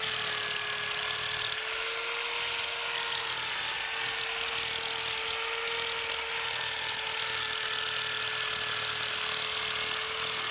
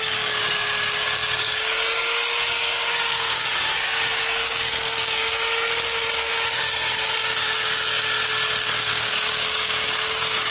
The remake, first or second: second